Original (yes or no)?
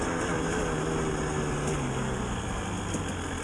yes